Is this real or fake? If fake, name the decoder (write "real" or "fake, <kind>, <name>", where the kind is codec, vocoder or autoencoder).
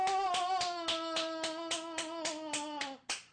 real